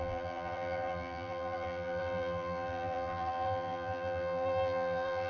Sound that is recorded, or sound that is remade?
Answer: remade